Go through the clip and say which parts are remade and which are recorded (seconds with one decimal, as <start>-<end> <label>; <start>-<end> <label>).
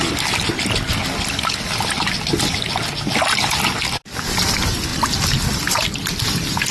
0.0-6.7 recorded